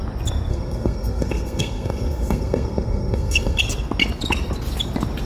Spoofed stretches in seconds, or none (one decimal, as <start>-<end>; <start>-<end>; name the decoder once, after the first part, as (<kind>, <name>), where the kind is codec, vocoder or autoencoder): 0.5-3.6 (codec, SNAC)